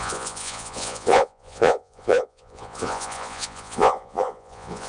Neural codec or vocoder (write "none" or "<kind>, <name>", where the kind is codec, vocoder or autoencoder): vocoder, Vocos